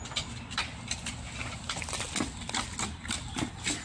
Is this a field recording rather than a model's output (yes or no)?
yes